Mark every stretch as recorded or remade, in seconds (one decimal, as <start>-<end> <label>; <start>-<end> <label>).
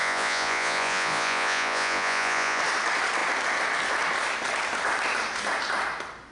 0.0-2.6 remade; 2.6-6.3 recorded